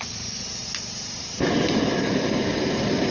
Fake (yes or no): yes